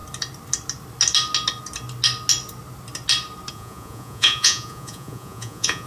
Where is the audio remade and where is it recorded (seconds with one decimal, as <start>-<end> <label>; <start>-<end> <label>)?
0.0-3.5 recorded; 3.5-5.9 remade